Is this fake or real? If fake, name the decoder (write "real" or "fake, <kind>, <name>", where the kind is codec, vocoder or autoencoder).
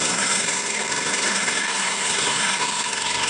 fake, codec, SNAC